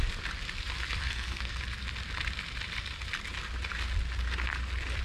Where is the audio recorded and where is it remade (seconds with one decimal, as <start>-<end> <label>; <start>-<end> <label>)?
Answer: 0.0-1.0 recorded; 1.0-1.6 remade; 1.6-5.0 recorded